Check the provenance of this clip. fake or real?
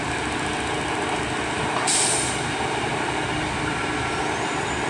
real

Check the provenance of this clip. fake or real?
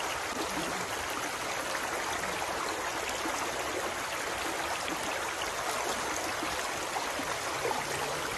real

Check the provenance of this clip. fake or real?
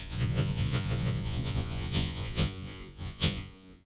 fake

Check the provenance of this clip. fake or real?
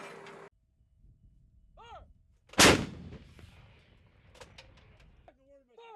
real